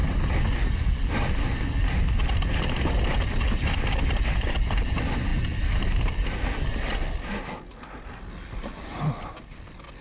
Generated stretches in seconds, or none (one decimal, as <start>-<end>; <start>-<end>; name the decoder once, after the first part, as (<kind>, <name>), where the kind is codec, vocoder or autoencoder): none